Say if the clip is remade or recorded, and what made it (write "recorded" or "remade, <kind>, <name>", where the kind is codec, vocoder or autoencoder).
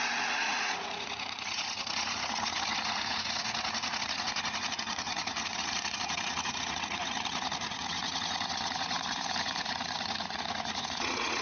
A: remade, vocoder, Vocos